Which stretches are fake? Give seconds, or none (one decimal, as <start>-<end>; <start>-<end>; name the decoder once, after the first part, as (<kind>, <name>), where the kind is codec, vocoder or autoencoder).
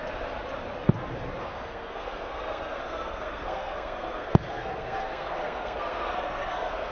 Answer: 1.4-6.9 (codec, SNAC)